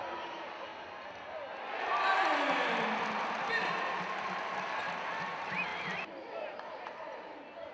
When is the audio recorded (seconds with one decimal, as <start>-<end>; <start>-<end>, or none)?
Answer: 0.7-3.7; 5.7-6.7

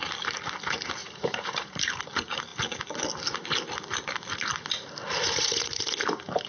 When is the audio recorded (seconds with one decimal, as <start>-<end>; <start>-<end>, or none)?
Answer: 0.0-1.0; 1.9-6.5

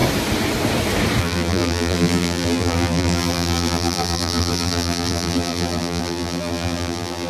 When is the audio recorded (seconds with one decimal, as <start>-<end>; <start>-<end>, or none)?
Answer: 0.0-1.2

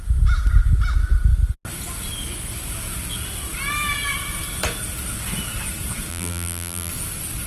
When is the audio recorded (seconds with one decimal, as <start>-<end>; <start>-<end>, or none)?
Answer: 0.0-6.1; 6.9-7.5

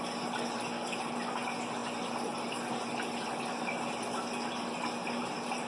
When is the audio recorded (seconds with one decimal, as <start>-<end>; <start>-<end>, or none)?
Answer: 0.0-5.7

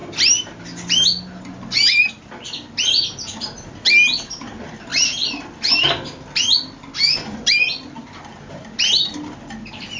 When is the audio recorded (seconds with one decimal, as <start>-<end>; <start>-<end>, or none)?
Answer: 0.0-10.0

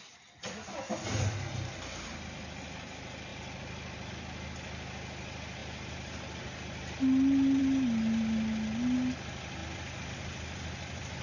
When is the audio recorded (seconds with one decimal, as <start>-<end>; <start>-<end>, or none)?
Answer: 0.0-3.3; 4.1-11.2

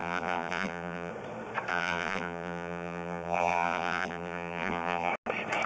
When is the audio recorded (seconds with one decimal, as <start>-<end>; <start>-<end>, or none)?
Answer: 1.1-1.7; 5.1-5.7